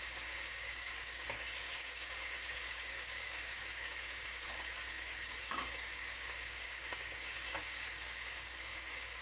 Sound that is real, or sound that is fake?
fake